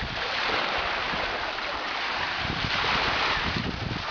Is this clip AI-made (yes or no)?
no